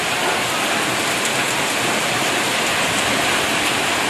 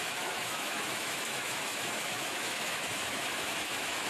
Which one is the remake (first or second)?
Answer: second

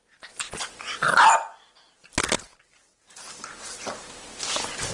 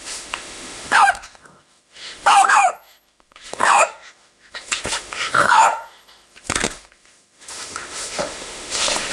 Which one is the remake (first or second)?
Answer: second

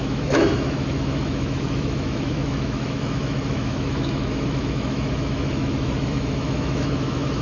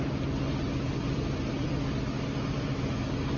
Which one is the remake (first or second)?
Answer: first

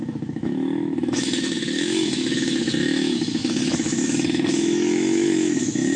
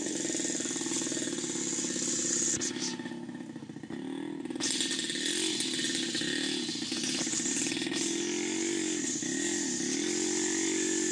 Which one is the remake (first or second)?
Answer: first